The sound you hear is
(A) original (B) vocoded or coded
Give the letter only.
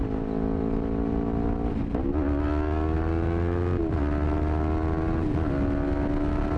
A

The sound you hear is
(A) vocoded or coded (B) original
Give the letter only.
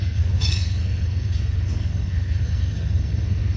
A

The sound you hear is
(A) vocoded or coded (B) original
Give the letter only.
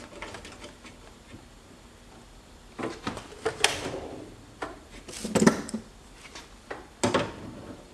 B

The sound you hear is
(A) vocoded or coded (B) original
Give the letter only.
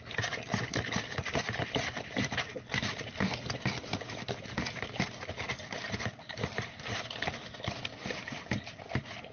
B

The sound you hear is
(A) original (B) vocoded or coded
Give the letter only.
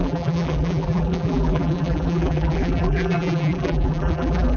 B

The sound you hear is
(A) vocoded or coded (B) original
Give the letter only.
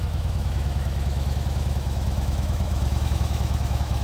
A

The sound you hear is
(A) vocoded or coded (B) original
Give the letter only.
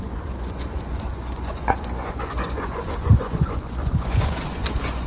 A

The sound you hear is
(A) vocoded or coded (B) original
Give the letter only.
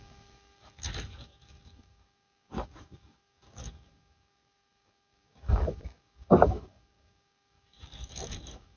A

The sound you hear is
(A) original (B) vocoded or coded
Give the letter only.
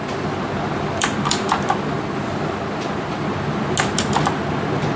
A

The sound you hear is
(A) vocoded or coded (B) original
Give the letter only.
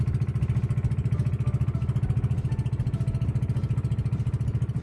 B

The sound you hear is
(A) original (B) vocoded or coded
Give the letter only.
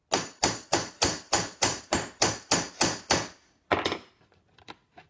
A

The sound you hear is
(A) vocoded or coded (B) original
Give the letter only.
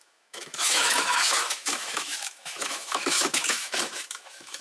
A